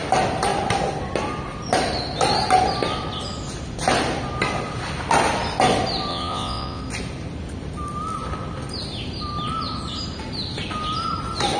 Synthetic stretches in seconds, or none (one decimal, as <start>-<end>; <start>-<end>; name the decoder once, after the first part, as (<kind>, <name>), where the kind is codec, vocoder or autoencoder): 6.1-6.8 (vocoder, WaveNeXt)